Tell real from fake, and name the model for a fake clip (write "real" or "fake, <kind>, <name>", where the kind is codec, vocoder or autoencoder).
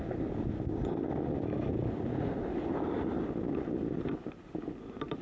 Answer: real